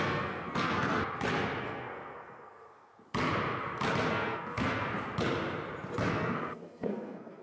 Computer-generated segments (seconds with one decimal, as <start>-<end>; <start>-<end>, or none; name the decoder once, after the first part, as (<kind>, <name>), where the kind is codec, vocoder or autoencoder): 0.0-1.0 (codec, SNAC); 1.6-2.9; 4.1-4.9; 6.1-7.4